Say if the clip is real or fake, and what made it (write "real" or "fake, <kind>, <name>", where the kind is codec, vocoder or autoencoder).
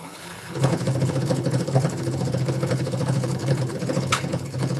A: fake, codec, HILCodec